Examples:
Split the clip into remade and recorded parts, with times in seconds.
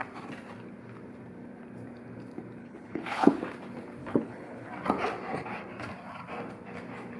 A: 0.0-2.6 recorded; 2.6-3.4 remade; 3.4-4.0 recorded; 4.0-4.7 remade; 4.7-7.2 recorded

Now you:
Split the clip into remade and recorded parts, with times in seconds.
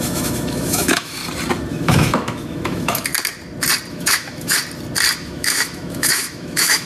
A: 0.0-1.2 remade; 1.2-1.7 recorded; 1.7-3.1 remade; 3.1-3.9 recorded; 3.9-4.6 remade; 4.6-5.2 recorded; 5.2-6.9 remade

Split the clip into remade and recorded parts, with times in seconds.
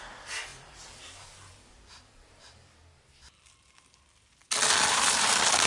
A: 0.0-2.8 remade; 2.8-4.9 recorded; 4.9-5.7 remade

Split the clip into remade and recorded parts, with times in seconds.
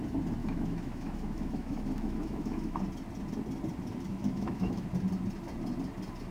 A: 0.0-0.4 recorded; 0.4-2.8 remade; 2.8-4.1 recorded; 4.1-4.9 remade; 4.9-6.3 recorded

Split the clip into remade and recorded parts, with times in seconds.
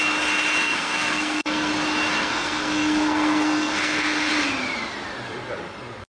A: 0.0-0.6 recorded; 0.6-1.7 remade; 1.7-2.2 recorded; 2.2-4.3 remade; 4.3-6.1 recorded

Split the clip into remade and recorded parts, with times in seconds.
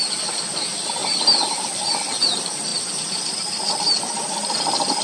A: 0.0-5.0 recorded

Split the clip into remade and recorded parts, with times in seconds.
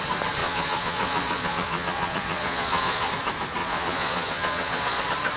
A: 0.0-0.4 recorded; 0.4-3.1 remade; 3.1-3.6 recorded; 3.6-5.0 remade; 5.0-5.4 recorded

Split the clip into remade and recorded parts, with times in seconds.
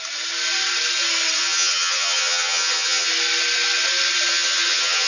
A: 0.0-1.4 recorded; 1.4-3.1 remade; 3.1-4.3 recorded; 4.3-5.1 remade